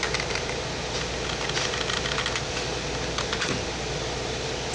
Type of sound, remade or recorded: recorded